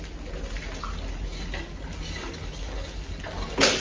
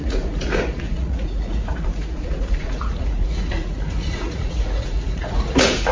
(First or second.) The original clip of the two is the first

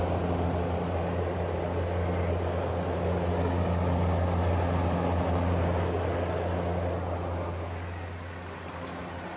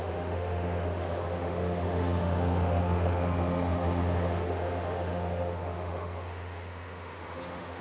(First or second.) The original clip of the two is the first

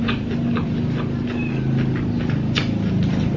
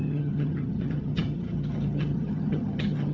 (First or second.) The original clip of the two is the first